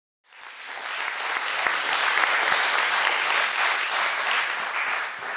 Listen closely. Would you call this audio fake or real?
real